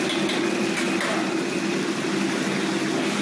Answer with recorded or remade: recorded